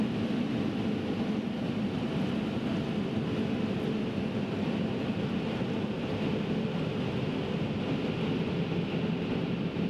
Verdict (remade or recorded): recorded